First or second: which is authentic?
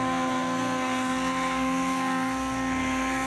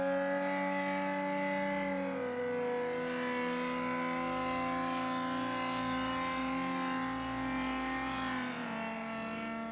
second